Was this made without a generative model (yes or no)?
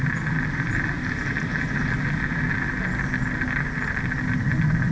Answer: yes